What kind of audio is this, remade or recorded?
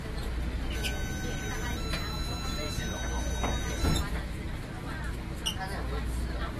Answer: recorded